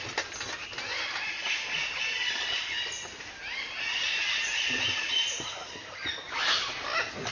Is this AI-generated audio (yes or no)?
no